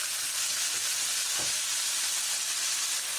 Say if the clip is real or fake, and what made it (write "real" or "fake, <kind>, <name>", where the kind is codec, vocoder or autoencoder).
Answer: real